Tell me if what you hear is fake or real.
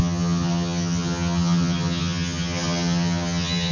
fake